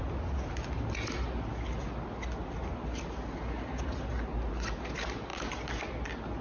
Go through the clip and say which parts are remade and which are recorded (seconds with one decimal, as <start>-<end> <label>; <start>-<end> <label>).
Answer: 0.0-6.4 recorded

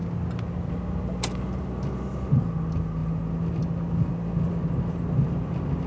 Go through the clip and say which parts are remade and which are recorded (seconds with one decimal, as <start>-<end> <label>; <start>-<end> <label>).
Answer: 0.0-5.9 recorded

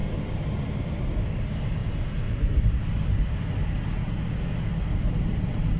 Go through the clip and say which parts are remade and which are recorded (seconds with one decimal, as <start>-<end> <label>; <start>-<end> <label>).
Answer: 0.0-1.2 remade; 1.2-1.8 recorded; 1.8-2.6 remade; 2.6-5.8 recorded

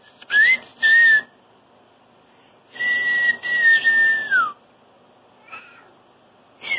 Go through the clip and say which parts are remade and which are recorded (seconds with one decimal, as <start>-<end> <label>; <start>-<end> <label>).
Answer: 0.0-6.8 recorded

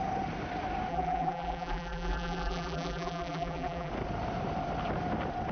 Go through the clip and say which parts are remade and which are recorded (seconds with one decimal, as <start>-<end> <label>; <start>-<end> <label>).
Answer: 0.0-0.9 recorded; 0.9-3.9 remade; 3.9-5.5 recorded

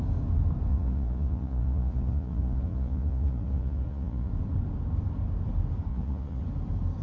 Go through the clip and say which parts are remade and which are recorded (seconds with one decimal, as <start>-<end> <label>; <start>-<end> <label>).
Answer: 0.0-0.7 recorded; 0.7-4.3 remade; 4.3-5.9 recorded; 5.9-6.4 remade; 6.4-7.0 recorded

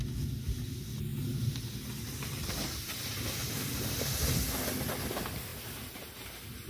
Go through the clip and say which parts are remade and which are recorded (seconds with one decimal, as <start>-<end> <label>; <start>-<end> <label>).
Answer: 0.0-6.7 recorded